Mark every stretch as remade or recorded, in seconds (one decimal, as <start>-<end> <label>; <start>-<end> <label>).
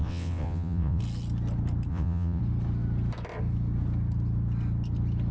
0.0-1.0 remade; 1.0-1.9 recorded; 1.9-2.4 remade; 2.4-5.3 recorded